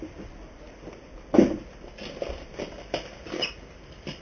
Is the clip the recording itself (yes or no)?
yes